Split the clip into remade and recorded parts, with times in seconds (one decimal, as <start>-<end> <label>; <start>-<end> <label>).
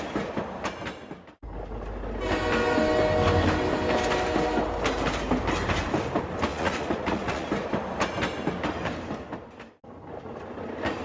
0.0-6.5 recorded; 6.5-7.5 remade; 7.5-11.0 recorded